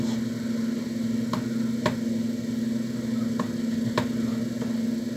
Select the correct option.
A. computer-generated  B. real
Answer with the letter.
B